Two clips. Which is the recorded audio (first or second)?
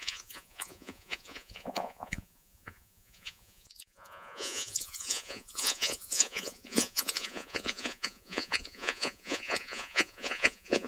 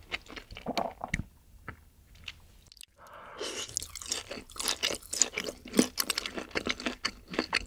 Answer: second